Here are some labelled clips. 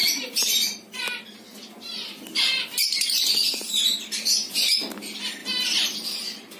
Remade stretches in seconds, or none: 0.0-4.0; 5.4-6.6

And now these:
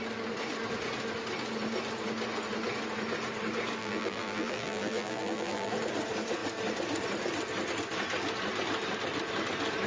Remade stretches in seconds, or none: 3.8-5.7

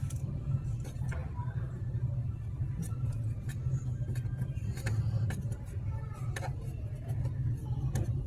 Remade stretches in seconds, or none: 1.2-2.8

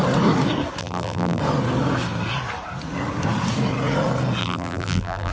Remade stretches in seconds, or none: 0.8-1.4; 4.4-5.3